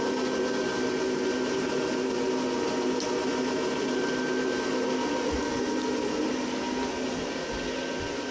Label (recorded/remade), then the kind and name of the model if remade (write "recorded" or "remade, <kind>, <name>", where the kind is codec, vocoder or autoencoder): recorded